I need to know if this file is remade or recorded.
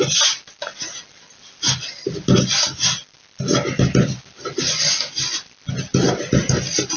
recorded